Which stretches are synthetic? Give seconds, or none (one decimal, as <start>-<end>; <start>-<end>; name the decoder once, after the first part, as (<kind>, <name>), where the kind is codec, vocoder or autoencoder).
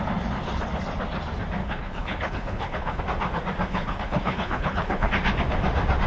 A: 1.6-3.0 (codec, HILCodec); 3.7-5.1